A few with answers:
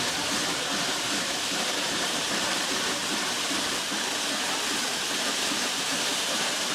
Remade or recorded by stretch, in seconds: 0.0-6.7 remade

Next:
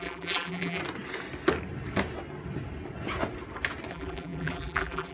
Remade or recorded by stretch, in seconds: 0.0-0.8 remade; 0.8-3.9 recorded; 3.9-5.1 remade

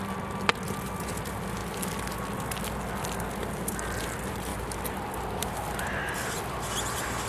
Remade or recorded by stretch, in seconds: 0.0-4.5 recorded; 4.5-6.3 remade; 6.3-7.3 recorded

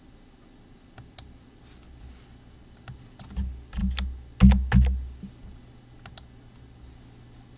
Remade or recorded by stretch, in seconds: 0.0-7.6 recorded

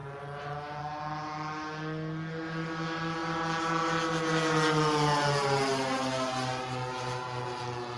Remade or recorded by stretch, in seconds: 0.0-8.0 recorded